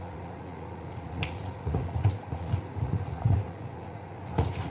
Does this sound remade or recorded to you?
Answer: remade